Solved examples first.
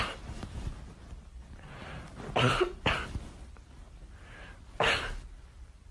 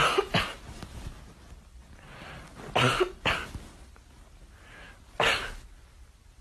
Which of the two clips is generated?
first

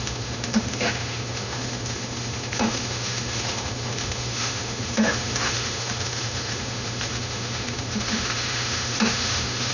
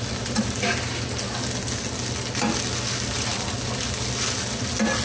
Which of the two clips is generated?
first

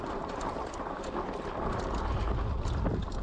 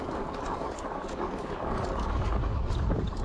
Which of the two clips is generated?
second